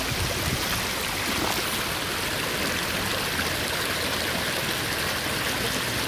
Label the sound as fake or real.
real